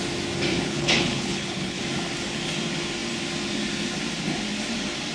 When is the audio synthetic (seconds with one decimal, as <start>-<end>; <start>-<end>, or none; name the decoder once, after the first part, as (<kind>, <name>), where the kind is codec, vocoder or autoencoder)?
0.5-1.8 (codec, HILCodec)